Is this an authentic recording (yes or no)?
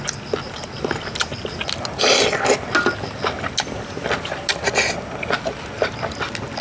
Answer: yes